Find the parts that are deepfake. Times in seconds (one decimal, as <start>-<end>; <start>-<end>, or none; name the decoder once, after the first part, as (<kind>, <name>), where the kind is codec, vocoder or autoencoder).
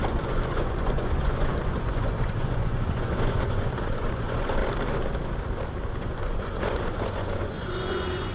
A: 0.0-4.6 (vocoder, Vocos); 6.0-8.3